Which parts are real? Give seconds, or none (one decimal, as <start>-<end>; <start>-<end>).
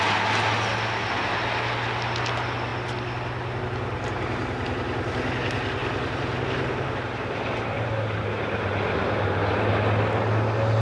0.0-5.8; 9.6-10.8